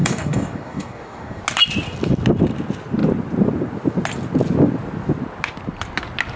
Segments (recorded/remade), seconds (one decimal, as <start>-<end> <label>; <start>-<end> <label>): 0.0-1.4 remade; 1.4-6.4 recorded